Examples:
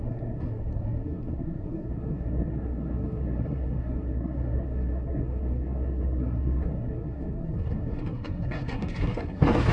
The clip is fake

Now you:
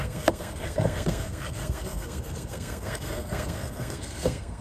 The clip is fake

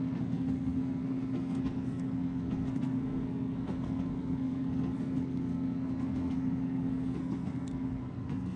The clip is fake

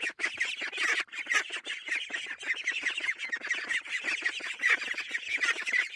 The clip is real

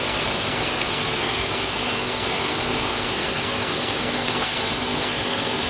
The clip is fake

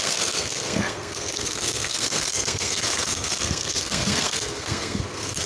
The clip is fake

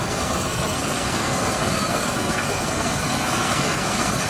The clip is fake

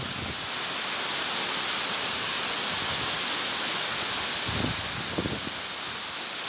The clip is real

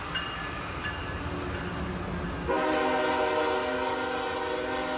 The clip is real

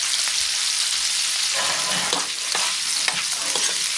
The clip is real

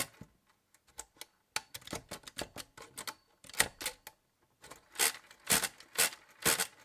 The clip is real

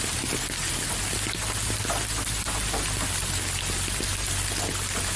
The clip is real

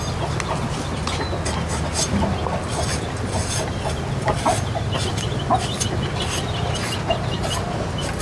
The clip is real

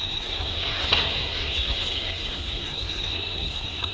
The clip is fake